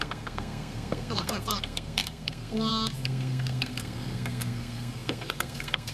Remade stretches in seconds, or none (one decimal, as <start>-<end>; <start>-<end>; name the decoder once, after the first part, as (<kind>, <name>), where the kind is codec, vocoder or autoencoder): 0.0-5.9 (codec, SNAC)